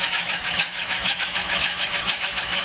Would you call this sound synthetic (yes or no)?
yes